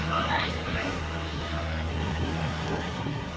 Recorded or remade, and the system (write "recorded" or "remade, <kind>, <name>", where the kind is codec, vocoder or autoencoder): remade, codec, SNAC